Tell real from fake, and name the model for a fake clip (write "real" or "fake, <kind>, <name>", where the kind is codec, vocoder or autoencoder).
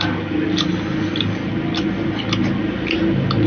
real